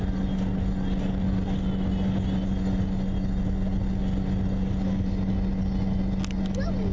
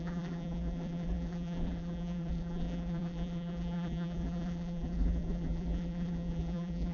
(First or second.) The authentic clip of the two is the first